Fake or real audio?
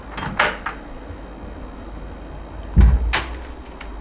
real